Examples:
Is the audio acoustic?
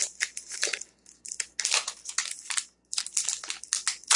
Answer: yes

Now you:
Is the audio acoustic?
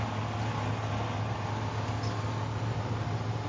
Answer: yes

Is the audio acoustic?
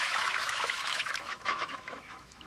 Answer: no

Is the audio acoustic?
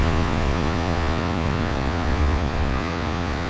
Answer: no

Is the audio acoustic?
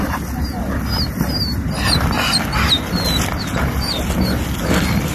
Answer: yes